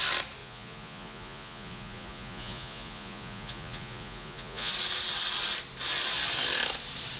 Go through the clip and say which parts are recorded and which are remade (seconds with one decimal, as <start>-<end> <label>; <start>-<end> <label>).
0.0-0.4 recorded; 0.4-4.7 remade; 4.7-7.2 recorded